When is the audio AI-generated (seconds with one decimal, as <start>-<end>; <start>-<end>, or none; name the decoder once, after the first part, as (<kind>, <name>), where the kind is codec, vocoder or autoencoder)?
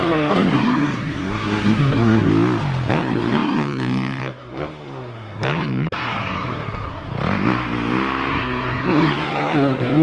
0.0-2.3 (codec, SNAC); 2.9-7.1; 8.3-10.0